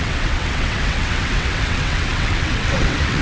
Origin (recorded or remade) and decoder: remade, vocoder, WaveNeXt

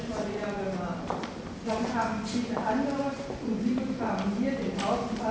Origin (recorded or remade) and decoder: recorded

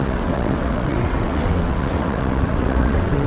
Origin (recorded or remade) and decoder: remade, vocoder, WaveNeXt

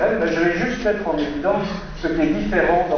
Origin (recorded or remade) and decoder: recorded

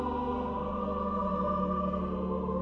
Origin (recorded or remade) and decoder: recorded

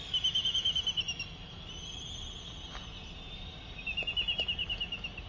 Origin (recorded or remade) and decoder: recorded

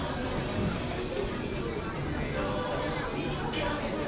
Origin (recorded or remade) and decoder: recorded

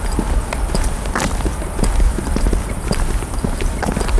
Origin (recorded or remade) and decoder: recorded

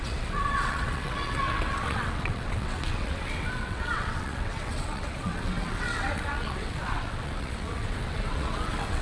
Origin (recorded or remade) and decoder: remade, vocoder, WaveNeXt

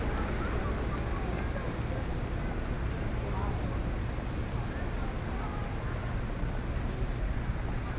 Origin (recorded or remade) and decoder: recorded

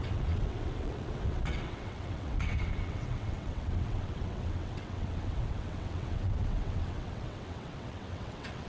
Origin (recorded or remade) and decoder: remade, vocoder, WaveNeXt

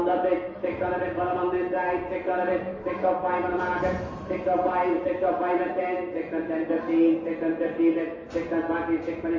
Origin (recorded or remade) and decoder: recorded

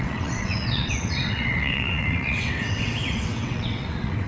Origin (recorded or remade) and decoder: remade, vocoder, WaveNeXt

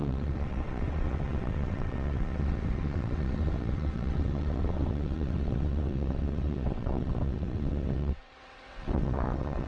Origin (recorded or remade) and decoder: remade, vocoder, WaveNeXt